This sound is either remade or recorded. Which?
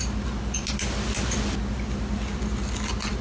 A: recorded